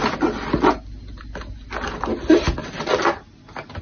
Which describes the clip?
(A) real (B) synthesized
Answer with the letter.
A